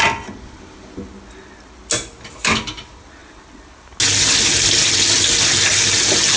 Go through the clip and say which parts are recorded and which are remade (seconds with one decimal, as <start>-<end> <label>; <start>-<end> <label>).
0.0-6.4 recorded